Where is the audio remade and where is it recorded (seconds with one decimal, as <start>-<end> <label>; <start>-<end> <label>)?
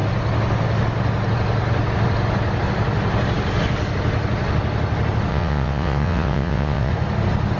0.0-5.3 recorded; 5.3-6.9 remade; 6.9-7.6 recorded